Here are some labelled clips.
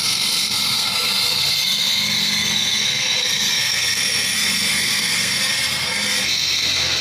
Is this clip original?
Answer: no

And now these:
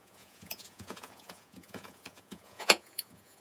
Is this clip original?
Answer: no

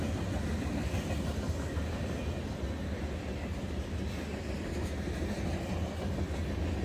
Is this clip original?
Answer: yes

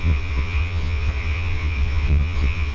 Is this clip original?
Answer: no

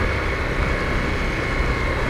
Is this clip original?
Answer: yes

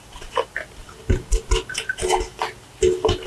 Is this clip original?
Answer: yes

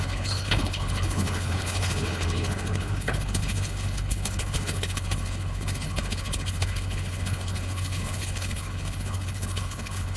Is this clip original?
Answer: no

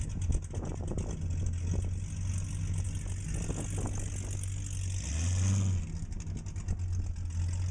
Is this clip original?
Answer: yes